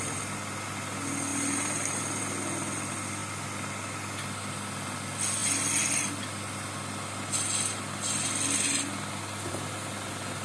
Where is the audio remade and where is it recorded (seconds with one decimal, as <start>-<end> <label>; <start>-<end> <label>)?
0.0-10.4 recorded